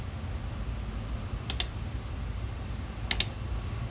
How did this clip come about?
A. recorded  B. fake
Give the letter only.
A